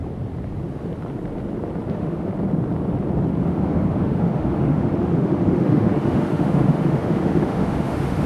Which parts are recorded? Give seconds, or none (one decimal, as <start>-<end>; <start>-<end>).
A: 0.0-1.9; 2.3-3.4